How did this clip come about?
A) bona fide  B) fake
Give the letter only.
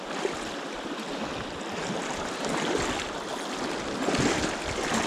A